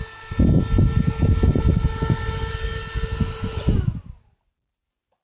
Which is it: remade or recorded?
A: recorded